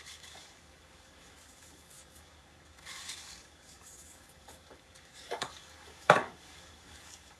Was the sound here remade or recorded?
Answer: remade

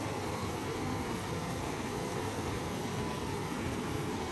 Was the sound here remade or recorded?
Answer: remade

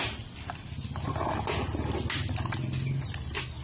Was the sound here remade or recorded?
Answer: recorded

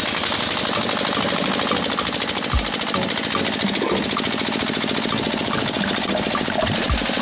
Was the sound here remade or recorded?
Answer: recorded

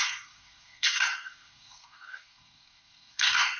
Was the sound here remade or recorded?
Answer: remade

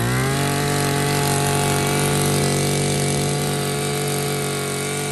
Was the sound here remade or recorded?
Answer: recorded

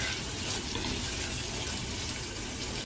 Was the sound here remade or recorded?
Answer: recorded